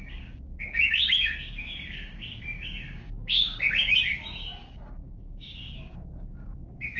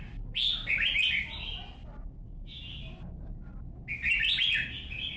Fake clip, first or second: first